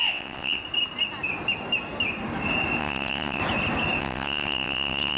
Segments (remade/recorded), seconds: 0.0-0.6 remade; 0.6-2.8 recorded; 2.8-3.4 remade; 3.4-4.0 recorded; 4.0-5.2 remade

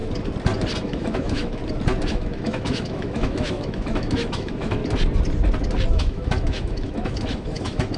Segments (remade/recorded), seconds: 0.0-0.8 recorded; 0.8-1.6 remade; 1.6-2.1 recorded; 2.1-4.8 remade; 4.8-5.9 recorded; 5.9-8.0 remade

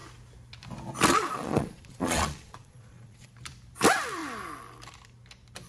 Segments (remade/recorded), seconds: 0.0-1.1 recorded; 1.1-3.3 remade; 3.3-5.7 recorded

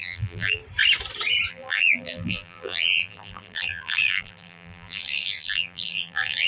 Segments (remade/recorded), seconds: 0.0-0.6 remade; 0.6-1.5 recorded; 1.5-6.5 remade